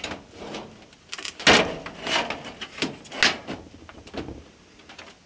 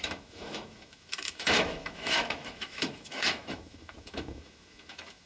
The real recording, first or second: first